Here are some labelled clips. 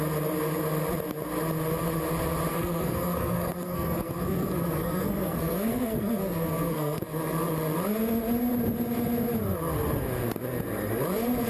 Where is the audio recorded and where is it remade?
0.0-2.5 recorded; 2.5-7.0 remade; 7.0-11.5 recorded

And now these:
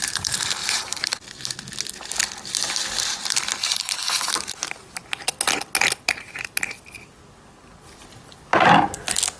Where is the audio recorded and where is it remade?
0.0-3.6 recorded; 3.6-4.3 remade; 4.3-9.4 recorded

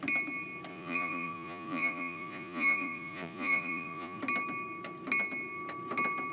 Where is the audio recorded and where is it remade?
0.0-0.7 recorded; 0.7-4.2 remade; 4.2-6.3 recorded

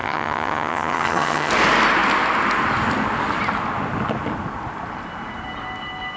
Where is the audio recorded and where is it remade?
0.0-1.5 remade; 1.5-6.2 recorded

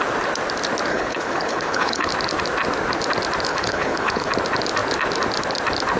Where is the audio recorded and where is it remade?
0.0-0.9 recorded; 0.9-2.1 remade; 2.1-3.5 recorded; 3.5-4.3 remade; 4.3-6.0 recorded